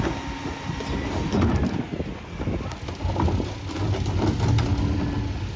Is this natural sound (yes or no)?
yes